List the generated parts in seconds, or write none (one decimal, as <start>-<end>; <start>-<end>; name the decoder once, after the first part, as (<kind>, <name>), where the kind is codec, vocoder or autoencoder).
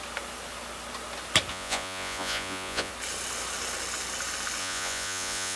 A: 1.5-2.9 (vocoder, Vocos); 4.6-5.6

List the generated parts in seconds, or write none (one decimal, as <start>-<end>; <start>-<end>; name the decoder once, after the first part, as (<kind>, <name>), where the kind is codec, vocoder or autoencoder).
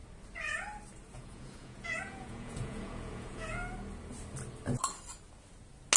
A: 1.1-3.6 (vocoder, Vocos)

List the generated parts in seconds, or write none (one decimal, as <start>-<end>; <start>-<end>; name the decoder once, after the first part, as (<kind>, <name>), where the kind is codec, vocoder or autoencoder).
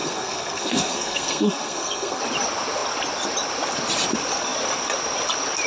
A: 0.0-2.2 (codec, SNAC)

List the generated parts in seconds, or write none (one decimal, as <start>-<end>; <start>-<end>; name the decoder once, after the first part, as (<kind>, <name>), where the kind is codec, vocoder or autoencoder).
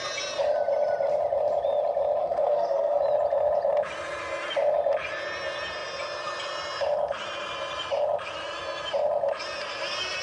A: 2.2-3.0 (codec, SNAC)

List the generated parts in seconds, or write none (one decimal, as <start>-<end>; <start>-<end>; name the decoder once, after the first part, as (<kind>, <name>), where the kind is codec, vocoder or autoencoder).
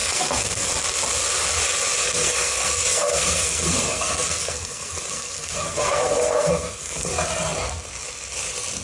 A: 0.0-0.7 (codec, SNAC); 2.0-7.1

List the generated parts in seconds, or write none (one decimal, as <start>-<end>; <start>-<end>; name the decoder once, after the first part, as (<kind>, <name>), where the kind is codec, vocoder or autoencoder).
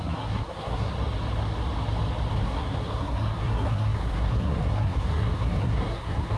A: 0.0-0.9 (codec, SNAC); 2.3-6.4